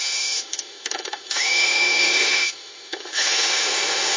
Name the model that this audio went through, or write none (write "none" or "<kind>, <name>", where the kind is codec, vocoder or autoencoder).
autoencoder, DAC-VAE